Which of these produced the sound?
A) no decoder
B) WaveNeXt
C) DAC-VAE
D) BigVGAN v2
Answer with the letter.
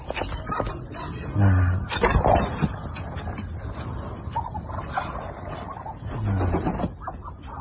A